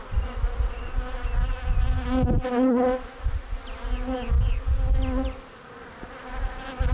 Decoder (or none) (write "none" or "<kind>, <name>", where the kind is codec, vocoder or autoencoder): none